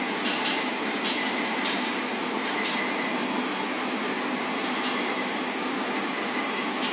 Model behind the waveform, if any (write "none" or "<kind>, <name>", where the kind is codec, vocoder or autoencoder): none